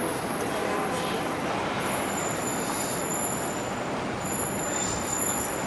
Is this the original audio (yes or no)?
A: yes